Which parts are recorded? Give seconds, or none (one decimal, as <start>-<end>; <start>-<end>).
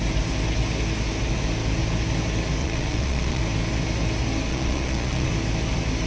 0.0-2.6; 3.4-4.5; 5.3-6.1